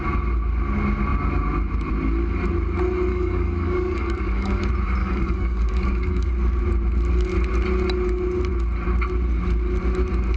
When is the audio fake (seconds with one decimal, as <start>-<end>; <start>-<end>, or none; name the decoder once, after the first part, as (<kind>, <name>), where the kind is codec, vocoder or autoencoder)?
3.1-4.6 (codec, DAC); 5.0-6.3